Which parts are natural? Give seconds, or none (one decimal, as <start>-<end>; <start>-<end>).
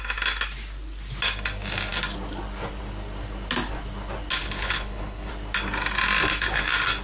0.0-4.4; 5.3-7.0